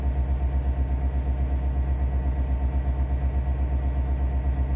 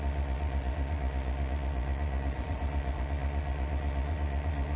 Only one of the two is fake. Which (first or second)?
second